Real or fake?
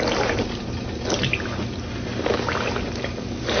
real